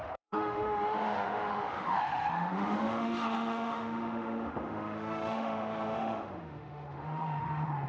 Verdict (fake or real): fake